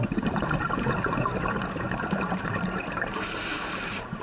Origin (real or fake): fake